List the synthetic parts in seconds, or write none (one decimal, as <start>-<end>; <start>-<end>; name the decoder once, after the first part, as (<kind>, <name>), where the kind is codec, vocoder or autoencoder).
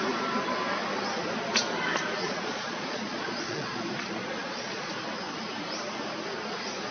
2.2-3.8 (vocoder, Vocos); 4.4-4.9